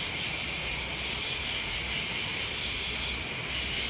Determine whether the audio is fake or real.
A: real